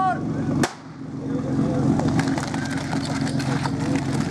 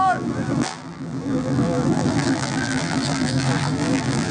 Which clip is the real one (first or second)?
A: first